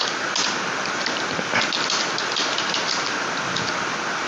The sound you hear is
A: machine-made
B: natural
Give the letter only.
B